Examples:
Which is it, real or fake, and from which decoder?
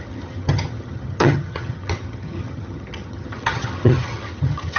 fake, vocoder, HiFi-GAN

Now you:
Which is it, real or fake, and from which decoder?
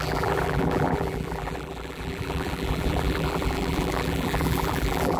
fake, vocoder, BigVGAN v2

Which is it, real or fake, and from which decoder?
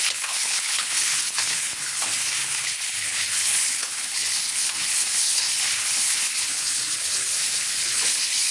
fake, codec, HILCodec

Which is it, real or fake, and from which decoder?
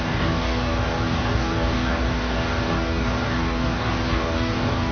fake, codec, DAC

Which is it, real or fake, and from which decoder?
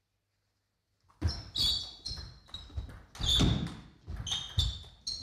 real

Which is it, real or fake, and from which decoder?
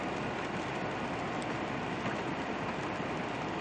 real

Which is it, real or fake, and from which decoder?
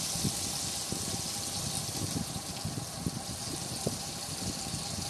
real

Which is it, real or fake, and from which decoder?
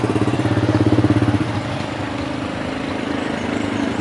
fake, vocoder, BigVGAN v2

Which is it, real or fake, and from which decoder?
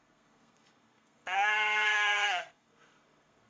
fake, codec, SNAC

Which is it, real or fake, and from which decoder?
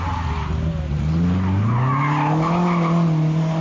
real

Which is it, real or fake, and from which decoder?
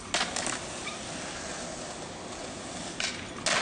real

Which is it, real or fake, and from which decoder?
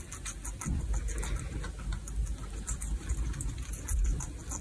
real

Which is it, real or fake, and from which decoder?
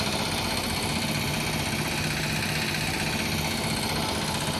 real